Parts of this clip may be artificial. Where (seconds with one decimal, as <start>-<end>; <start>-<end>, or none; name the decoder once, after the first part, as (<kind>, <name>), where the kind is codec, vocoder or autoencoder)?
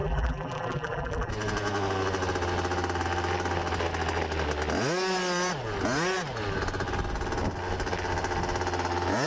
0.0-1.3 (vocoder, BigVGAN v2)